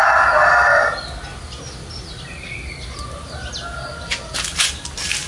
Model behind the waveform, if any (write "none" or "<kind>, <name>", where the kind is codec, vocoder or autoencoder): none